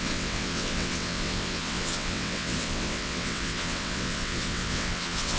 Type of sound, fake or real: fake